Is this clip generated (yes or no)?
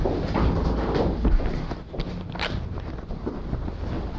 no